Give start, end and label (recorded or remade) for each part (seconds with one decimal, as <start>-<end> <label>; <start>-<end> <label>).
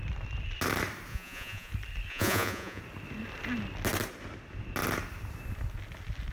0.0-1.1 recorded; 1.1-1.7 remade; 1.7-2.1 recorded; 2.1-2.8 remade; 2.8-6.3 recorded